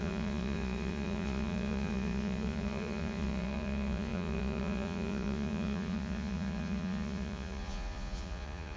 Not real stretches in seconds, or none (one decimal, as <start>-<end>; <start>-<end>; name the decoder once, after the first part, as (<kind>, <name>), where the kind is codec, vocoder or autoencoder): 0.0-8.8 (vocoder, Vocos)